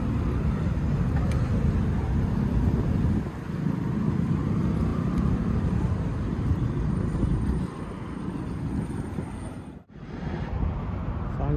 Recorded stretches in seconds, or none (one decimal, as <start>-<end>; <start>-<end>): 0.0-4.9; 7.6-11.6